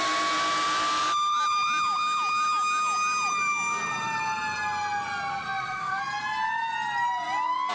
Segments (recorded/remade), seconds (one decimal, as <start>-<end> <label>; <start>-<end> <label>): 0.0-5.3 recorded; 5.3-6.0 remade; 6.0-7.7 recorded